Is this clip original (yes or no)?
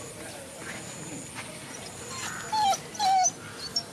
yes